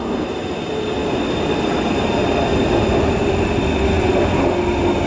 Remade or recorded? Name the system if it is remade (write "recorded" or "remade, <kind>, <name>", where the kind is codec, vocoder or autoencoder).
recorded